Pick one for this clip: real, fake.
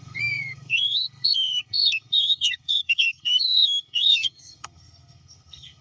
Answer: fake